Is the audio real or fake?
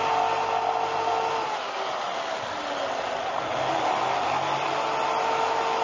real